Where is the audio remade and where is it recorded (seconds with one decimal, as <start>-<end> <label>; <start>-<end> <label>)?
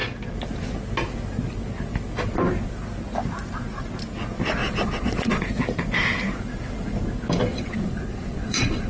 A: 0.0-4.6 recorded; 4.6-5.4 remade; 5.4-7.5 recorded; 7.5-8.9 remade